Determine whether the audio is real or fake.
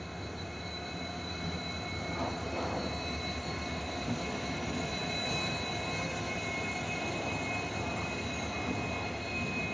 real